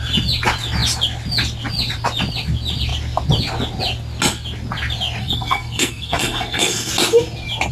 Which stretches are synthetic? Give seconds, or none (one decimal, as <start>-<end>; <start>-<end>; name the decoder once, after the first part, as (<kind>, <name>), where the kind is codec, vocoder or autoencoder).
5.2-6.9 (codec, SNAC)